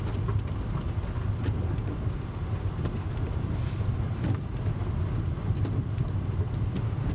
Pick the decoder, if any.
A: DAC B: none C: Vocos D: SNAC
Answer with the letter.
B